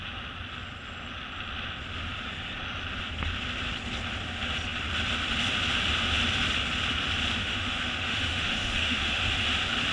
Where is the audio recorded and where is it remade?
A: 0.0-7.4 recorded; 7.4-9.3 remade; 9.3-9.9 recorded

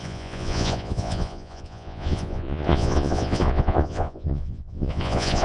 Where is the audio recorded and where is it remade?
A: 0.0-5.4 remade

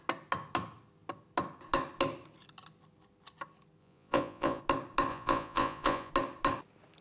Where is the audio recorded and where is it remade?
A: 0.0-3.8 recorded; 3.8-4.6 remade; 4.6-5.1 recorded; 5.1-6.1 remade; 6.1-7.0 recorded